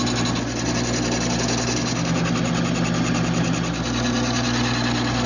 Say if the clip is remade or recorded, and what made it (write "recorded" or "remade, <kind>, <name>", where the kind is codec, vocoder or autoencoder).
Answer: recorded